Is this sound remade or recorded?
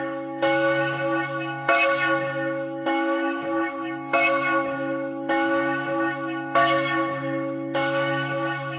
remade